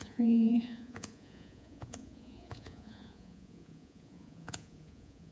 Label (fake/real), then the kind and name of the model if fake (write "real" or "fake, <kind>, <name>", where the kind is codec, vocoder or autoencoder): fake, vocoder, Vocos